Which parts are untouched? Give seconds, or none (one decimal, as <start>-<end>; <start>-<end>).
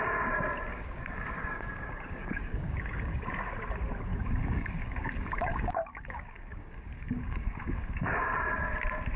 0.0-0.7; 3.2-4.1; 8.2-9.2